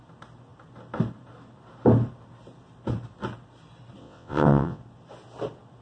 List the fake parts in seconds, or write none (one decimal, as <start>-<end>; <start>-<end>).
4.0-4.8